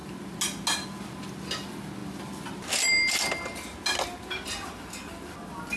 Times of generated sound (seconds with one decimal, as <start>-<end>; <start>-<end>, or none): none